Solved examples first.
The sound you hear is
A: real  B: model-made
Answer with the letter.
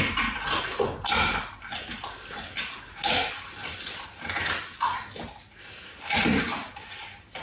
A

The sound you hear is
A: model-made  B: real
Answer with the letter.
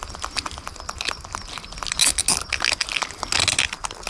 B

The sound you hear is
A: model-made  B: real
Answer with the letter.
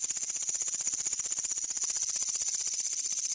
B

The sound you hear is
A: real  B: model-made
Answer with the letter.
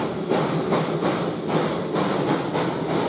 A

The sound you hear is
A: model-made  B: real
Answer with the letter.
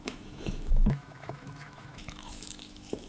A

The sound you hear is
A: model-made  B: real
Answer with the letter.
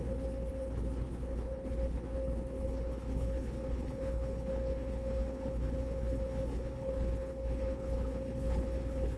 A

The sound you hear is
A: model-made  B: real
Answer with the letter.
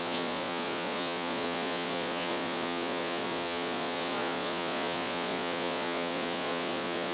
A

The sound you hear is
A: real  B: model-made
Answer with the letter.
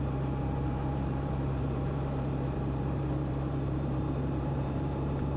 B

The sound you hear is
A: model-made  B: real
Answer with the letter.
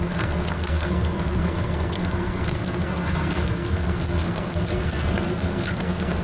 A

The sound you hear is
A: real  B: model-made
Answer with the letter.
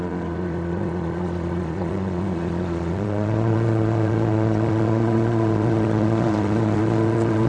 B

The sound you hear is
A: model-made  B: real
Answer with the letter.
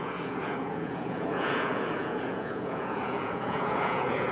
A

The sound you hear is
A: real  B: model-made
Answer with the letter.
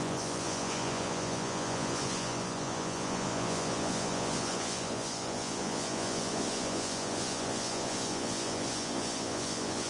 B